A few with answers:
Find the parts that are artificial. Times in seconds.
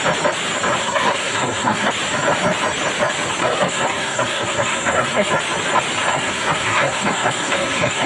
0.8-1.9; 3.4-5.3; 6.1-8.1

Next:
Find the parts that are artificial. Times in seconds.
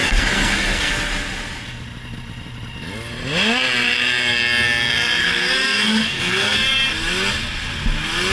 0.0-0.9; 5.2-6.9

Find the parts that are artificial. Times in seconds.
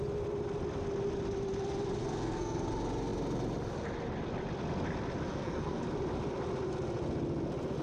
2.0-2.7; 5.3-5.8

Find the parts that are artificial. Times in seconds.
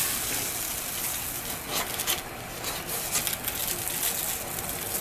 none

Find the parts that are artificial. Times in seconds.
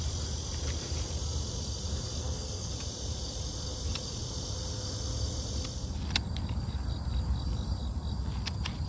2.2-2.7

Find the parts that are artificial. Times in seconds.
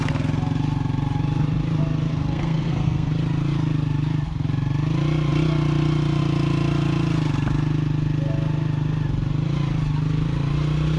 2.1-3.1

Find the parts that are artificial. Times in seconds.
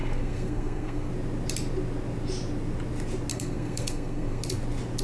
0.0-1.1; 3.3-4.4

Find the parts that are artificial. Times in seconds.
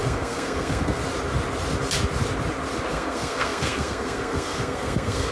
0.0-1.0; 2.9-5.3